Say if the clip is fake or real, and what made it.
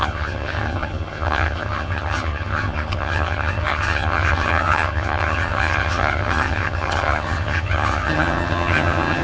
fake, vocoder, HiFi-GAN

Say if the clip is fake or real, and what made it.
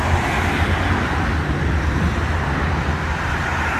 real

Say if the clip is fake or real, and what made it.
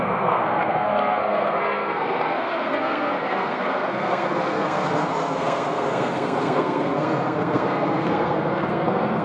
fake, codec, SNAC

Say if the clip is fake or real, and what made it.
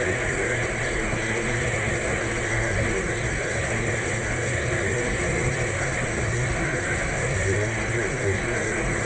fake, codec, SNAC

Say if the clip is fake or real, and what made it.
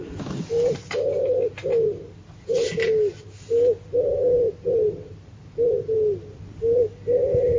real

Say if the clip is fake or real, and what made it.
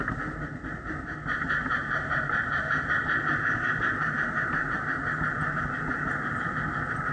real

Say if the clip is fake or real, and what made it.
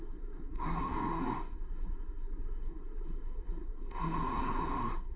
fake, codec, SNAC